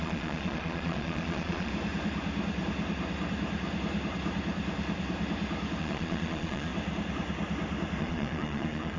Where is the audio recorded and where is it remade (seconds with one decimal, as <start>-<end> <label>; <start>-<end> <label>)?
0.0-1.7 remade; 1.7-5.8 recorded; 5.8-6.7 remade; 6.7-8.0 recorded; 8.0-9.0 remade